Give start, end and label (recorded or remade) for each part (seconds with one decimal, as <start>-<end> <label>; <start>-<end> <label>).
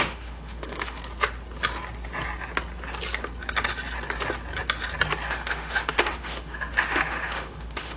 0.0-1.0 remade; 1.0-5.3 recorded; 5.3-8.0 remade